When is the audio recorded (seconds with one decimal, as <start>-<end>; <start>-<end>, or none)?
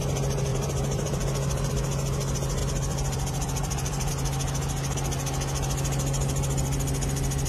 0.0-0.5; 1.7-2.6; 4.1-7.5